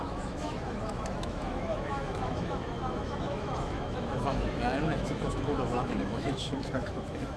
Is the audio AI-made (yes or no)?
yes